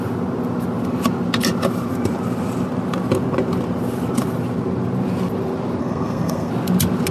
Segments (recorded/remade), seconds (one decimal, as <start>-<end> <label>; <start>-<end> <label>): 0.0-5.8 recorded; 5.8-6.5 remade; 6.5-7.1 recorded